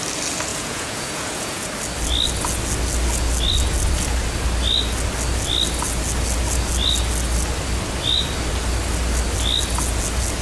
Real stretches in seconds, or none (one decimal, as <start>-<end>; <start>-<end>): 0.0-0.5; 1.7-10.4